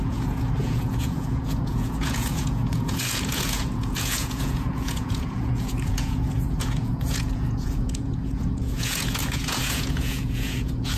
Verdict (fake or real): fake